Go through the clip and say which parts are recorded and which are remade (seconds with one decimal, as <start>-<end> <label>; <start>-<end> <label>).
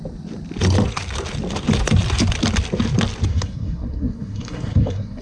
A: 0.0-3.3 recorded; 3.3-5.2 remade